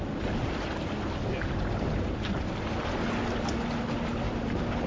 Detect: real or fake real